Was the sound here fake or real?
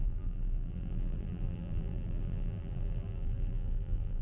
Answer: fake